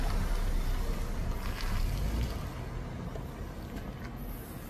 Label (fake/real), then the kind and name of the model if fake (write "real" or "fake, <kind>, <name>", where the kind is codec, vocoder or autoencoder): real